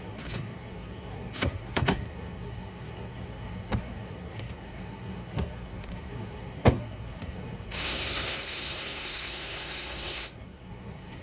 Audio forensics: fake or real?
fake